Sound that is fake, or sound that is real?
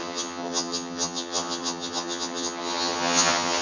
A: fake